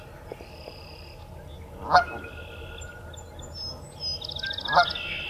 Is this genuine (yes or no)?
yes